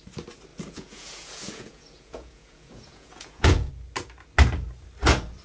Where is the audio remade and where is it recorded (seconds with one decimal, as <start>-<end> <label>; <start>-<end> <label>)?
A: 0.0-0.5 recorded; 0.5-3.7 remade; 3.7-5.4 recorded